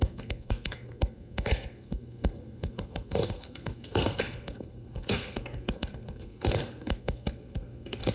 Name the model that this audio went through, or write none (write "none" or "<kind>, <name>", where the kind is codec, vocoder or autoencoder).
codec, SNAC